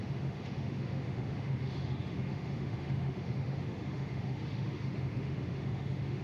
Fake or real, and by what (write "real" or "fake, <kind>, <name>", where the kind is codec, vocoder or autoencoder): fake, autoencoder, DAC-VAE